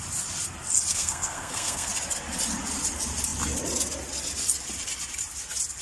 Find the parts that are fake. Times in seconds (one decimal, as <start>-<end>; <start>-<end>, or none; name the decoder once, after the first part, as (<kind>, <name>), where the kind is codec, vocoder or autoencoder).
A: 0.9-1.9 (codec, SNAC)